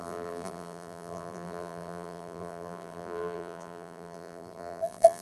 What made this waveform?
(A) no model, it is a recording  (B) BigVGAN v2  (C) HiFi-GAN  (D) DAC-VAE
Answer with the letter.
B